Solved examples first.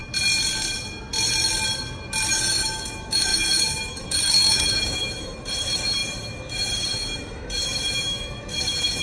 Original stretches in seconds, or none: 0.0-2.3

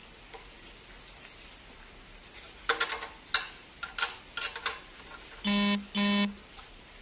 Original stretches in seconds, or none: 0.0-7.0

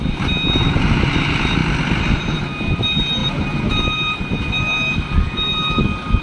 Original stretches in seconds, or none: 0.0-3.2; 4.3-6.2

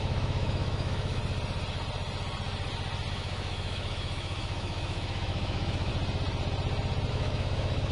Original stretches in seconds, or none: 1.2-3.1; 5.9-7.1